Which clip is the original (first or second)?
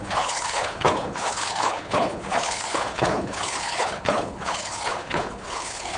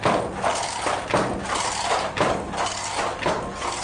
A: second